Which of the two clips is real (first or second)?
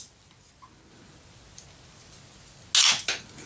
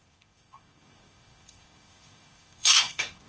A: first